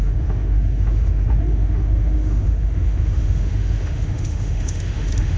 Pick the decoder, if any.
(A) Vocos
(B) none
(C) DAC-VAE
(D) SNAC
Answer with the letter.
C